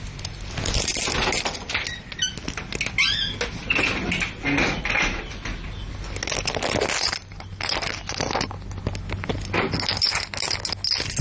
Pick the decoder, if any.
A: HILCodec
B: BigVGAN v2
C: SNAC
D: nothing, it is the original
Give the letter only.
D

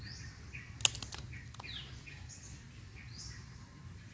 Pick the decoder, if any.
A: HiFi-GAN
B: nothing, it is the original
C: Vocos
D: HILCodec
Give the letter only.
B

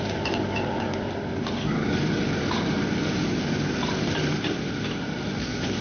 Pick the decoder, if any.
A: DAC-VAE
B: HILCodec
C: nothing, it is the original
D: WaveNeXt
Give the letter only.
C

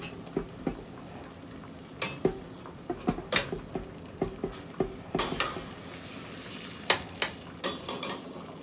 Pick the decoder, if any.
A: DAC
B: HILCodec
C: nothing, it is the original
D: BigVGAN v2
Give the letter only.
C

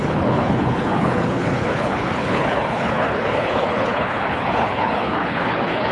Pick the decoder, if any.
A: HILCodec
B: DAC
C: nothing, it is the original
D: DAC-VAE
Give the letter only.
A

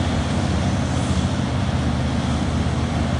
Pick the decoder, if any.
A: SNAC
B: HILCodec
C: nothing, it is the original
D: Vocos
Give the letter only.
C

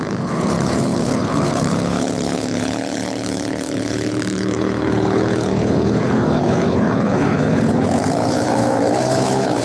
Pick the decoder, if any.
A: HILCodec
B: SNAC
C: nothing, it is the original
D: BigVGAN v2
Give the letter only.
A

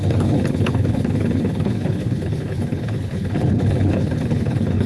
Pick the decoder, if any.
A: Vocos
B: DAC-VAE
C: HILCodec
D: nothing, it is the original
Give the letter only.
C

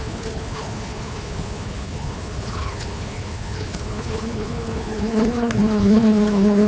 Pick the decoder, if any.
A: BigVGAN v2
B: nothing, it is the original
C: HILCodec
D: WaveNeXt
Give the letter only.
C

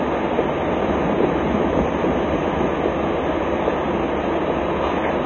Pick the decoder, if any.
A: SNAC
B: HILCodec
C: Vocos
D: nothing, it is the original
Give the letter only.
D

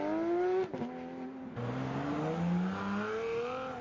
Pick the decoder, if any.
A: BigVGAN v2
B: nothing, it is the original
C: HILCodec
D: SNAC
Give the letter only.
B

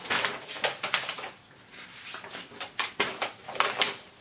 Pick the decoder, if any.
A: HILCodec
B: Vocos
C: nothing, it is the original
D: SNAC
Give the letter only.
C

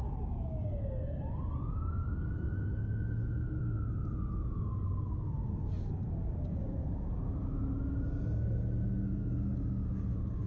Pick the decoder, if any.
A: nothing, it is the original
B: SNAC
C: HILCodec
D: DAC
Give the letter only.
A